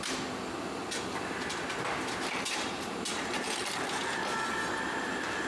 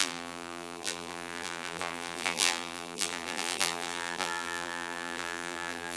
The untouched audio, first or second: first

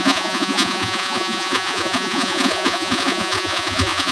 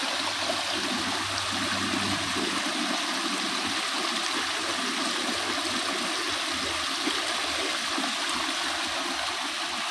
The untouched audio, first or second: second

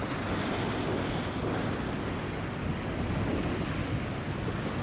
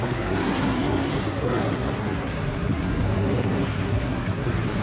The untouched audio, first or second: first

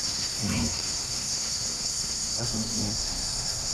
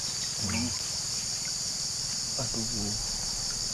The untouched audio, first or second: second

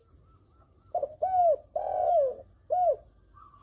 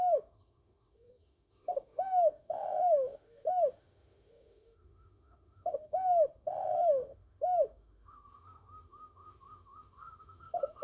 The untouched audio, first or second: first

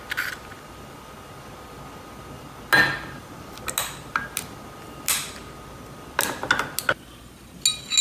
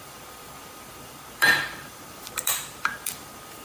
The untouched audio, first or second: first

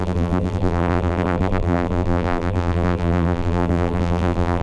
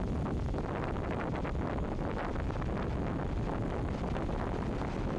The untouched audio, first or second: second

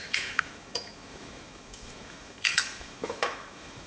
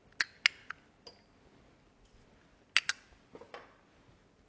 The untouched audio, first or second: second